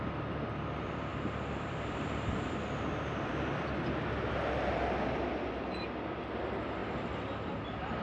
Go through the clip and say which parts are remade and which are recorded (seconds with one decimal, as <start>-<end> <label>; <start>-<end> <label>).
0.0-1.1 recorded; 1.1-5.5 remade; 5.5-8.0 recorded